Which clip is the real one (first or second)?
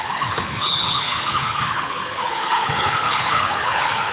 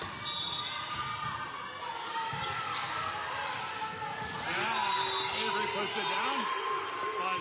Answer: second